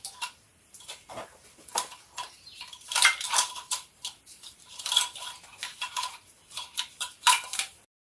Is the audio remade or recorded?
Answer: remade